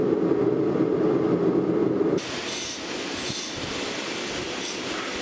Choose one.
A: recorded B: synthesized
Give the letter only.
A